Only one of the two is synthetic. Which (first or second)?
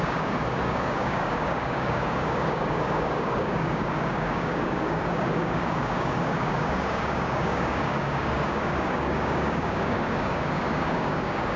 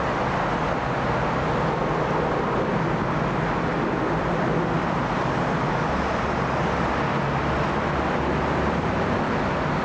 first